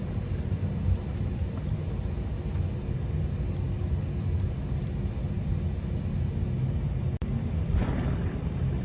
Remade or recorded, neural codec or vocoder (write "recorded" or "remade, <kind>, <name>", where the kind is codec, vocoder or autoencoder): recorded